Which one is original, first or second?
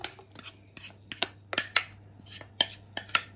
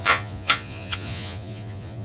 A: first